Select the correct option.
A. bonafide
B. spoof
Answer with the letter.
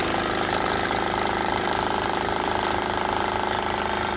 A